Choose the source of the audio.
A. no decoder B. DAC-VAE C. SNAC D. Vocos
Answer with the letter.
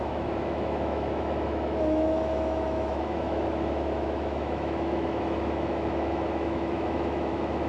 B